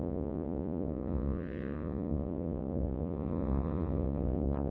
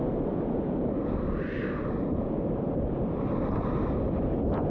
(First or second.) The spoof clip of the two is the first